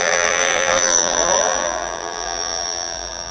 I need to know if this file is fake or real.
fake